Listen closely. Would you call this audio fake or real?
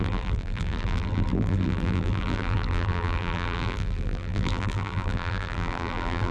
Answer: fake